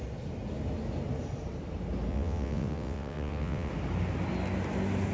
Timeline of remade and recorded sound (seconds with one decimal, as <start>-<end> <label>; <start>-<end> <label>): 0.0-2.1 recorded; 2.1-3.7 remade; 3.7-5.1 recorded